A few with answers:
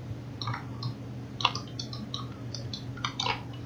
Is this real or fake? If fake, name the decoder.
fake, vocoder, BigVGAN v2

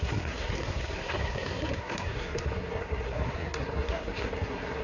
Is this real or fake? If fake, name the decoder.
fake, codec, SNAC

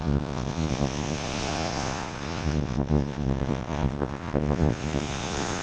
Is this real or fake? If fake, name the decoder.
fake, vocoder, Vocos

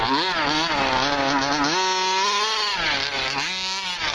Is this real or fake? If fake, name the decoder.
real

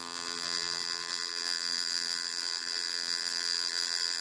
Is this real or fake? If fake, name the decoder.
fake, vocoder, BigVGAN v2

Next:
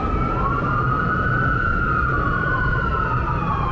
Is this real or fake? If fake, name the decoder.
real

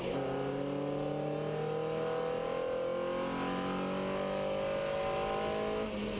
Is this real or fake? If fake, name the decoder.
real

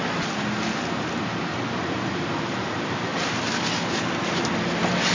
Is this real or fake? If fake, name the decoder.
real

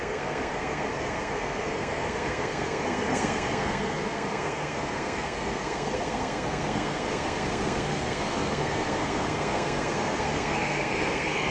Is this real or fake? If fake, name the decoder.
fake, codec, SNAC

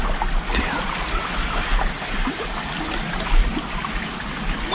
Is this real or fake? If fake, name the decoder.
real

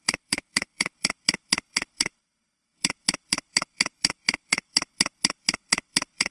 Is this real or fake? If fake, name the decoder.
fake, codec, HILCodec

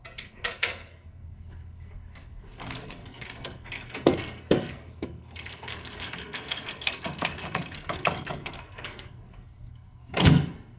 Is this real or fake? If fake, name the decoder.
fake, codec, SNAC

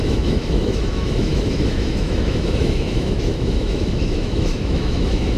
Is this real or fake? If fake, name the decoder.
fake, autoencoder, DAC-VAE